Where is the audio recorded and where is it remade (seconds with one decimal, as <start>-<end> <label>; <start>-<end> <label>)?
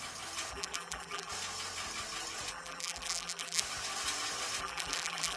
0.0-0.5 recorded; 0.5-1.3 remade; 1.3-2.5 recorded; 2.5-3.6 remade; 3.6-4.6 recorded; 4.6-5.4 remade